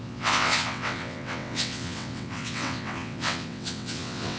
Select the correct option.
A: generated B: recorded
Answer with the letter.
A